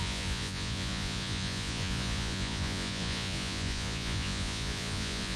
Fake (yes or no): yes